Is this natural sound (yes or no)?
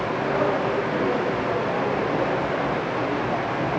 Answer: yes